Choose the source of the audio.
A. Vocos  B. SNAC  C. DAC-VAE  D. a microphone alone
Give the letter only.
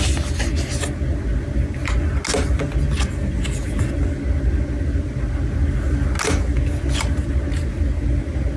D